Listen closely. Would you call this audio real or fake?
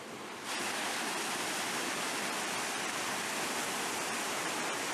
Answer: fake